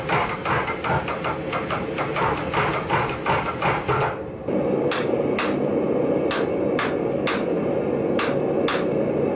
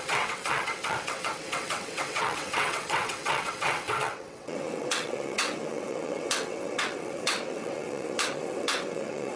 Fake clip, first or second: second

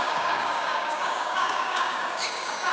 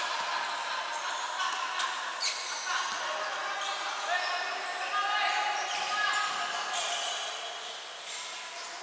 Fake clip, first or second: first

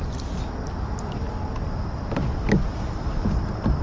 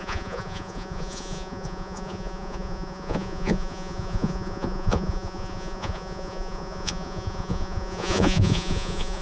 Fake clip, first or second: second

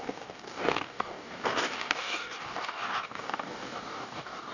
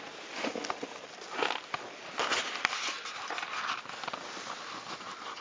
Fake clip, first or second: first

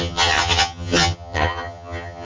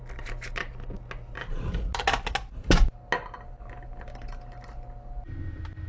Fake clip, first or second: first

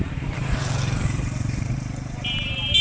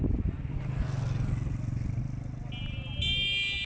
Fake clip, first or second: first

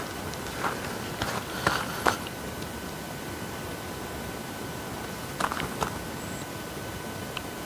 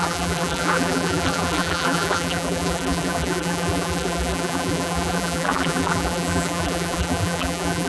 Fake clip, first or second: second